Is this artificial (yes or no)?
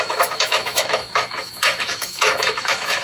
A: yes